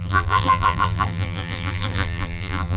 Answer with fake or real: fake